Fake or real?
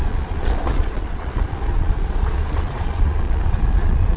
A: fake